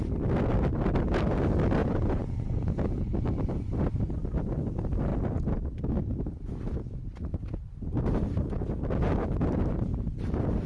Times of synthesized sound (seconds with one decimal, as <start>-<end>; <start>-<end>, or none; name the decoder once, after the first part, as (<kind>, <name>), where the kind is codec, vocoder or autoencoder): 1.8-3.0 (vocoder, Vocos)